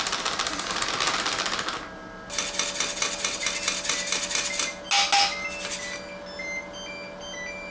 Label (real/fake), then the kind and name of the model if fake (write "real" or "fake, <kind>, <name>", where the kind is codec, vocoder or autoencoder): real